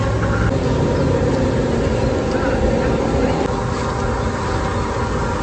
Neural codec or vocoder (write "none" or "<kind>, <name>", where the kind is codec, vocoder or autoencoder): none